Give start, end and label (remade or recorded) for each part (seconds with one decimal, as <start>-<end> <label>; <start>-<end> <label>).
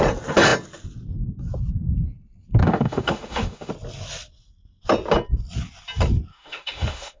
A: 0.0-2.6 recorded; 2.6-3.7 remade; 3.7-6.3 recorded; 6.3-7.2 remade